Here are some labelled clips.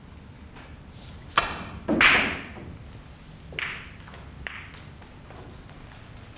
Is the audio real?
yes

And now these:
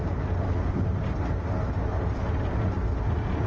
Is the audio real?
yes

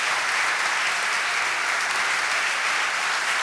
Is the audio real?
yes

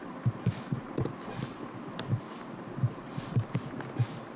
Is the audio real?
yes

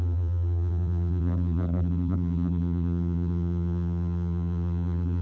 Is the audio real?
no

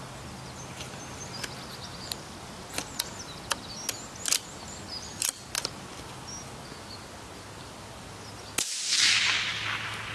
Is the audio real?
yes